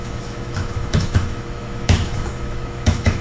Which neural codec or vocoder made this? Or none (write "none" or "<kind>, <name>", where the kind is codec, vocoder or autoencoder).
autoencoder, DAC-VAE